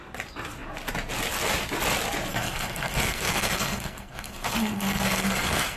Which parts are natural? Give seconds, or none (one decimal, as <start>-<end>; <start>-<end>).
0.0-2.3